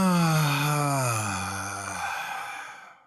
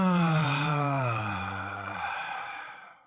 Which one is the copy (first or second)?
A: second